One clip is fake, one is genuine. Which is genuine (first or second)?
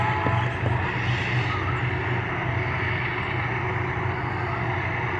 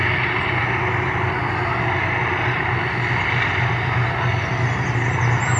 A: second